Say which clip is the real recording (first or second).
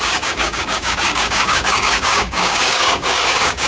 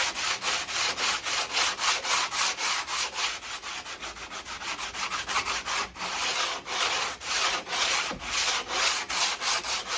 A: second